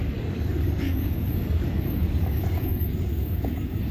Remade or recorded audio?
remade